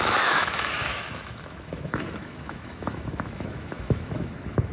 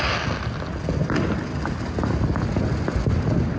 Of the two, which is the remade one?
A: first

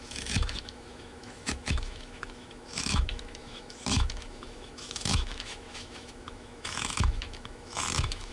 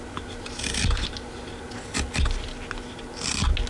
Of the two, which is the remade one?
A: first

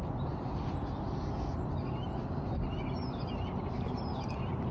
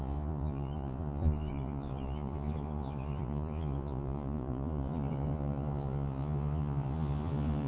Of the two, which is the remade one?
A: second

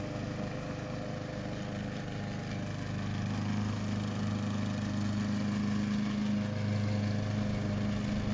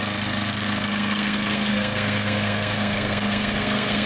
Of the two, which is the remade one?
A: second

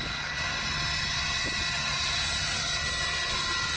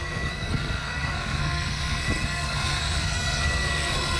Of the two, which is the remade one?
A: second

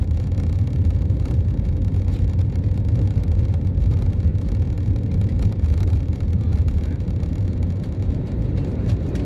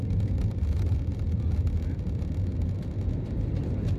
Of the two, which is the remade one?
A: first